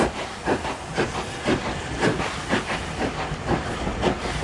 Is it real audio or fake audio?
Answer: real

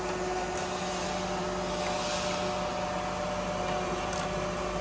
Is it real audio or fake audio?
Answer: real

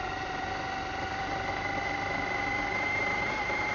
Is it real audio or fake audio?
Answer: real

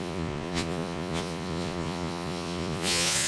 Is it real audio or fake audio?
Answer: fake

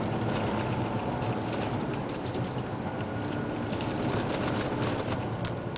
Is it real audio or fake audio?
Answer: real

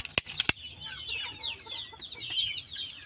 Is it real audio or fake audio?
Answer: real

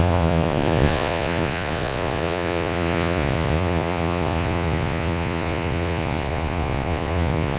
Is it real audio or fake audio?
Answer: fake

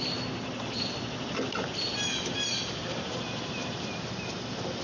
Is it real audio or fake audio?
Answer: real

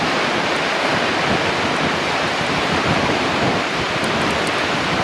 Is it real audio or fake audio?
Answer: real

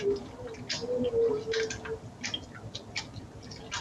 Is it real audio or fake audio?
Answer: real